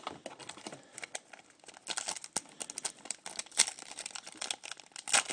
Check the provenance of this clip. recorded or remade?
recorded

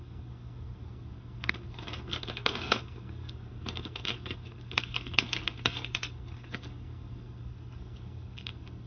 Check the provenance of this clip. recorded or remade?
remade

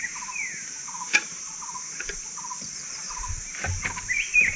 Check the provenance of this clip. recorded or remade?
remade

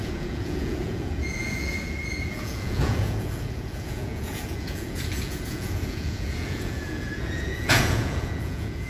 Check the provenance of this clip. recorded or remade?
remade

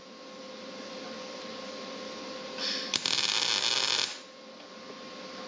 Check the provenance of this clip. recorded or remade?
recorded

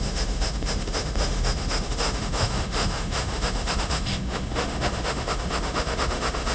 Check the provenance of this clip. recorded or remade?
remade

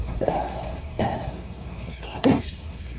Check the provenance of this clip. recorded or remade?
remade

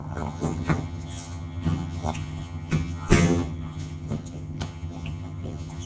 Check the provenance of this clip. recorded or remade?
remade